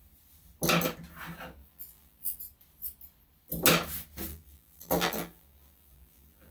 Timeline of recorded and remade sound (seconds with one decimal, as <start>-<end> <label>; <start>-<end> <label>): 0.0-1.6 recorded; 1.6-2.4 remade; 2.4-4.3 recorded; 4.3-6.5 remade